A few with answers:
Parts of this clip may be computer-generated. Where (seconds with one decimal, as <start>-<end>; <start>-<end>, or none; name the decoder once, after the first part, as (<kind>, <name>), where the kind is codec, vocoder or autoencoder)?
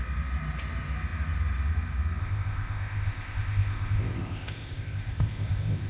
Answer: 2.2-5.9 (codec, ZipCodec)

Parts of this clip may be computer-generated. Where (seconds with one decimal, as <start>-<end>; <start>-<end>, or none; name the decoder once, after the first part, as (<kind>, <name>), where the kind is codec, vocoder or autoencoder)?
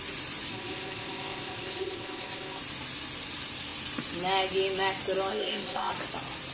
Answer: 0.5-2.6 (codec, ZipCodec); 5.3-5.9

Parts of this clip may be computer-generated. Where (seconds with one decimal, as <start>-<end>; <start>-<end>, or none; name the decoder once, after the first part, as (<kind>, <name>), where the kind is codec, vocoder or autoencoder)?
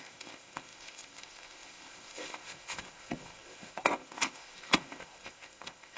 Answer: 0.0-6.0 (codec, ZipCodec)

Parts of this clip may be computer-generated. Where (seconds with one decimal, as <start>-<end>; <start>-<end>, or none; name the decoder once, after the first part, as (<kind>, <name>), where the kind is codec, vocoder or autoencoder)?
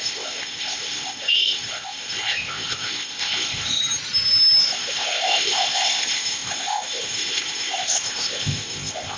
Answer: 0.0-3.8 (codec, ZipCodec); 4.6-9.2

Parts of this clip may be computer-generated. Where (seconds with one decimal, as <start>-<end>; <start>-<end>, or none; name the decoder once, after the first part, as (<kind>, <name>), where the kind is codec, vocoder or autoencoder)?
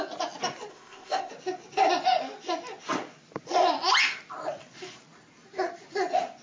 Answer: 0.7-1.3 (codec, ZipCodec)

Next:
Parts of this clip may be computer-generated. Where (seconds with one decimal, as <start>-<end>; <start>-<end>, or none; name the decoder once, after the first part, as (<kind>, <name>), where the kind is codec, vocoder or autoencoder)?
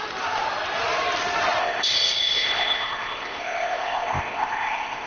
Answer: 1.6-5.1 (codec, ZipCodec)